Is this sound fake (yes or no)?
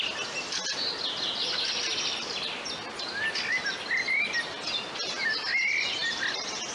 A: no